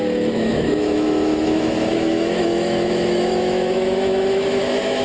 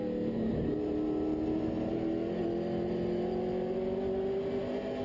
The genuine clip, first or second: second